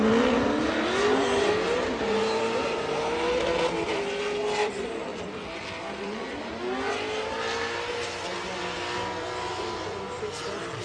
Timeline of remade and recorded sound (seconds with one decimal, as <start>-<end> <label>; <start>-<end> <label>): 0.0-10.8 recorded